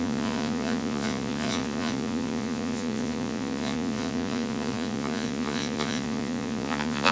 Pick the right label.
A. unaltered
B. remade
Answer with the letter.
B